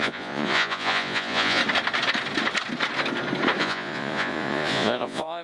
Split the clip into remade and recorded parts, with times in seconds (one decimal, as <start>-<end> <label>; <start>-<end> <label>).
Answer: 0.0-1.6 remade; 1.6-3.6 recorded; 3.6-5.4 remade